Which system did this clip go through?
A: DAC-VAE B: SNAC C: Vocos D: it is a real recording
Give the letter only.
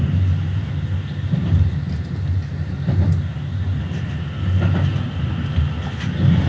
D